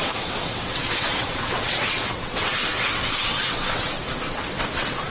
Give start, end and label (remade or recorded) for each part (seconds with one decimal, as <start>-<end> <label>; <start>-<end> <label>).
0.0-5.1 remade